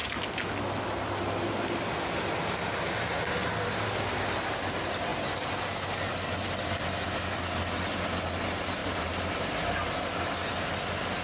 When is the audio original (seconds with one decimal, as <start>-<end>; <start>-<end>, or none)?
0.0-8.8; 9.6-11.2